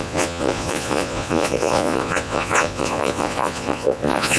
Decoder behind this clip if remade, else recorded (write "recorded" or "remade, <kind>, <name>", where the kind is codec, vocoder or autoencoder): remade, vocoder, Vocos